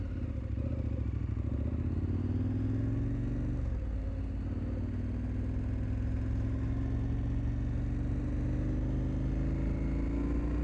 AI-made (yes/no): no